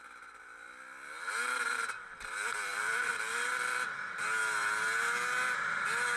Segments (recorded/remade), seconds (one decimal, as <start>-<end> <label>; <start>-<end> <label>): 0.0-2.7 recorded; 2.7-3.5 remade; 3.5-6.2 recorded

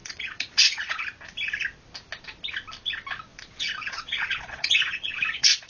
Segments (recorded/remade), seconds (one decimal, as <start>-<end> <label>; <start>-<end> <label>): 0.0-1.0 remade; 1.0-3.3 recorded; 3.3-5.7 remade

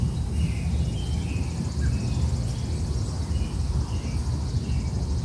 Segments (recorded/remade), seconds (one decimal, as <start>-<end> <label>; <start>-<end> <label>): 0.0-5.2 recorded